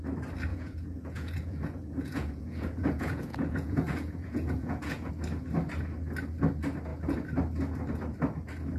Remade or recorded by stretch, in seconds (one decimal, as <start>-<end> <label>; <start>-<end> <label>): 0.0-0.5 recorded; 0.5-5.1 remade; 5.1-8.8 recorded